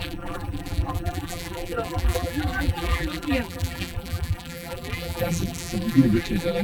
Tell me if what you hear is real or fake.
fake